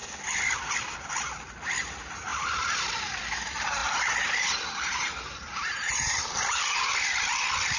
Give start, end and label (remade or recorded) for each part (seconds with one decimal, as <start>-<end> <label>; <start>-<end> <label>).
0.0-2.3 recorded; 2.3-3.2 remade; 3.2-3.8 recorded; 3.8-6.9 remade; 6.9-7.8 recorded